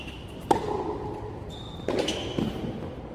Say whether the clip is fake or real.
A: real